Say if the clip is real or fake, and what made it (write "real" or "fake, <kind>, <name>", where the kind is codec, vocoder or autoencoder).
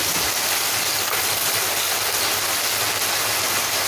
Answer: real